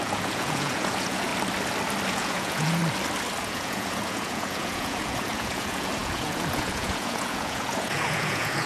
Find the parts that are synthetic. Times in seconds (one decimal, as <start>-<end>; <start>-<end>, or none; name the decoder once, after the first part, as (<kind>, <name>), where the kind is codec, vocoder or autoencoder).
0.0-1.3 (vocoder, Vocos); 2.1-2.8; 3.4-8.7